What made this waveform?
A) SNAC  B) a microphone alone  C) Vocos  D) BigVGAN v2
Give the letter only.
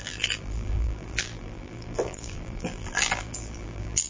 D